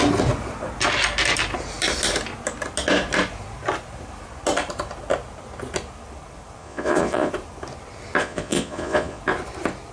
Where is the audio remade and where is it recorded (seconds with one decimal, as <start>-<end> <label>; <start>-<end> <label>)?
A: 0.0-6.6 recorded; 6.6-7.3 remade; 7.3-8.2 recorded; 8.2-9.2 remade; 9.2-9.9 recorded